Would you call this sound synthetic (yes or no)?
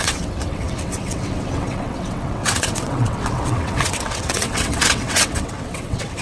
yes